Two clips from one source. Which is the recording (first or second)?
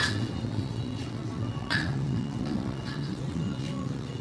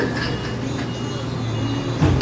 second